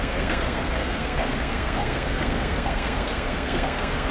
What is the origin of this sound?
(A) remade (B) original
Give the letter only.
A